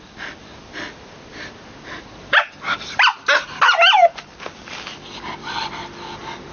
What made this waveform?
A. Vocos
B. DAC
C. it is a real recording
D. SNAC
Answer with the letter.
C